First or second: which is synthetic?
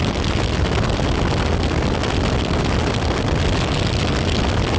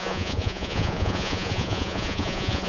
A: second